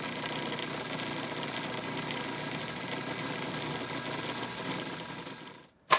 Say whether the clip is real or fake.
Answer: real